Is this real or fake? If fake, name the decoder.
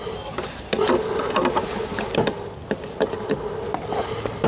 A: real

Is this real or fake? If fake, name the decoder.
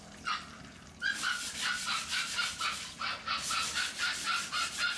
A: real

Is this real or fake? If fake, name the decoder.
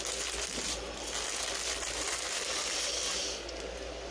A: real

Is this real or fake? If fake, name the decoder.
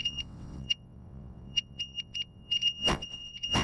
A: fake, vocoder, WaveNeXt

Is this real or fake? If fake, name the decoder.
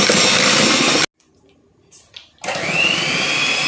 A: real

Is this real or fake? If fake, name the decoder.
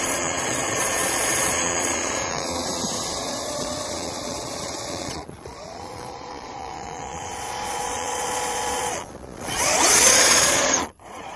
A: fake, vocoder, Vocos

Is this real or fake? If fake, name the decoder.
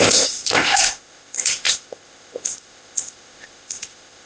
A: fake, codec, ZipCodec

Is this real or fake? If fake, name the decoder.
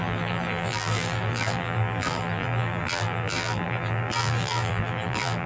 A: fake, vocoder, BigVGAN v2